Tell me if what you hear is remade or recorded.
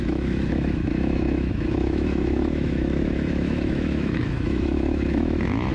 remade